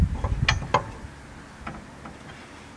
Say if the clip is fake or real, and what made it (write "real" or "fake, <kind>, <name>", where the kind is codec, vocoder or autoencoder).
real